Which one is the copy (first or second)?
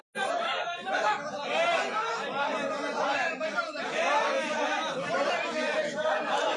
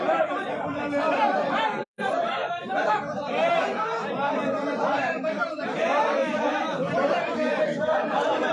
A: second